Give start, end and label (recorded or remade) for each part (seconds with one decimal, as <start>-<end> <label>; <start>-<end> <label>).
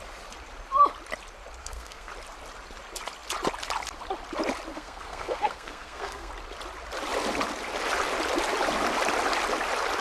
0.0-1.6 recorded; 1.6-2.1 remade; 2.1-4.7 recorded; 4.7-6.3 remade; 6.3-10.0 recorded